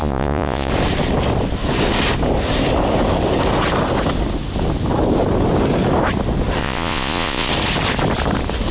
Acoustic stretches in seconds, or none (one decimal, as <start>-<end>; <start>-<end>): 0.7-6.6; 7.5-8.7